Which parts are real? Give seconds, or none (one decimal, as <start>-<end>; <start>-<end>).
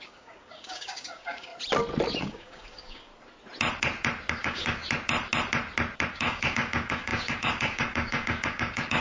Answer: 1.5-2.2; 3.1-4.3; 4.8-6.1